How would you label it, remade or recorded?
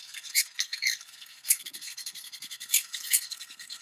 remade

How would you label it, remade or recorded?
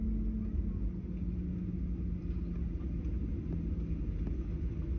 recorded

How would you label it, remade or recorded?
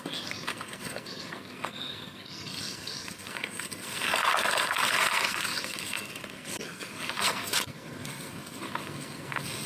remade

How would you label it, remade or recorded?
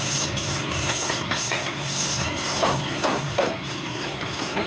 remade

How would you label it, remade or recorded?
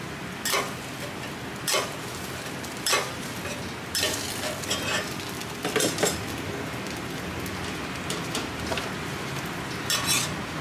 recorded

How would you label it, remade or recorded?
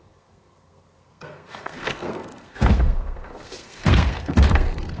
remade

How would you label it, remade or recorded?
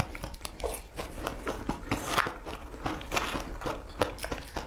recorded